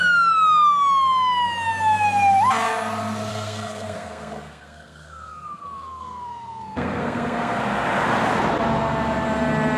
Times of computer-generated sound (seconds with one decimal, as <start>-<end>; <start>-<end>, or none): 3.3-7.6